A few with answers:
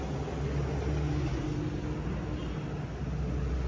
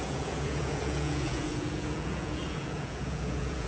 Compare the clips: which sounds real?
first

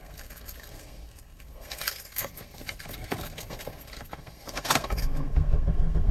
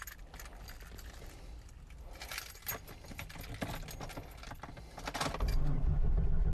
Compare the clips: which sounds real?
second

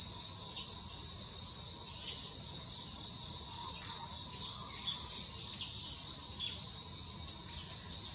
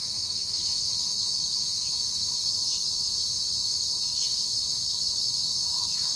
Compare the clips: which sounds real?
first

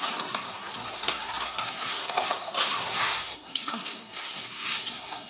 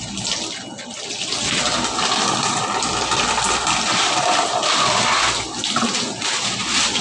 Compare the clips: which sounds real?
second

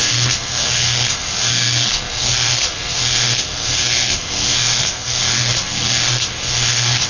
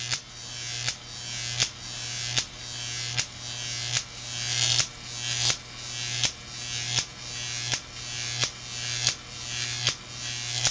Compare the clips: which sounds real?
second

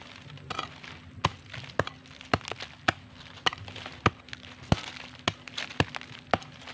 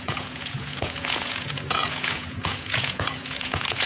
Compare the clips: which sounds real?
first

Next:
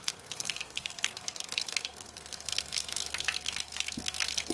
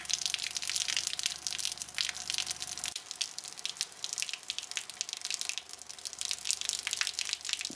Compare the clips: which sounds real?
second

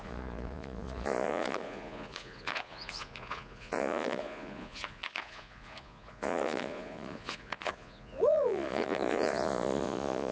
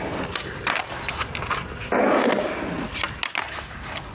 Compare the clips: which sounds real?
second